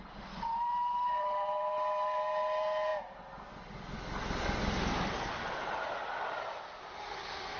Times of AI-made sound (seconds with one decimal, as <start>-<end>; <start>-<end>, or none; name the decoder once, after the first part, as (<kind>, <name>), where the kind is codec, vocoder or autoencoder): none